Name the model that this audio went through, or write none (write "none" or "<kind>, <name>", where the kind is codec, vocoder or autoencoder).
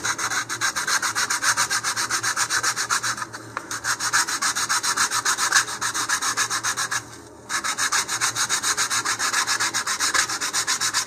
none